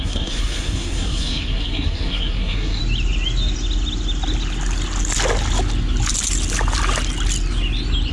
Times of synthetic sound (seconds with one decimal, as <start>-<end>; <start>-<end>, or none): 0.0-2.8